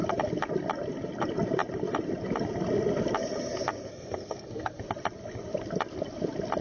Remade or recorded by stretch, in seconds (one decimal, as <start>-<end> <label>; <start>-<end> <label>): 0.0-3.9 recorded; 3.9-4.8 remade; 4.8-6.6 recorded